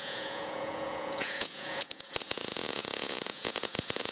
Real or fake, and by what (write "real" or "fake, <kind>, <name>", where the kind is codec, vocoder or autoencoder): fake, vocoder, Vocos